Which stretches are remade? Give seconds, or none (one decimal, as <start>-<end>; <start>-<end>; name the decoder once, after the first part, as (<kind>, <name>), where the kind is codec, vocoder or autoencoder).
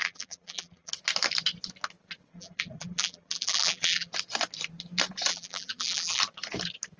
0.0-0.9 (vocoder, BigVGAN v2); 2.3-4.1; 5.3-6.2